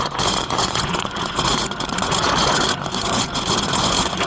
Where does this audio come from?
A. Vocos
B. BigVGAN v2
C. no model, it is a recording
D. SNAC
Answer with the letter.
A